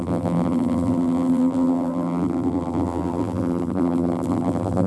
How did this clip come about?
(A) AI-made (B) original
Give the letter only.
A